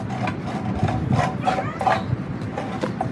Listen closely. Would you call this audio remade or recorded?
recorded